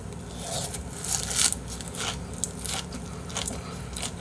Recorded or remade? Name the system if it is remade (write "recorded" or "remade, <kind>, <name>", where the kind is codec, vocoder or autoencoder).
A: recorded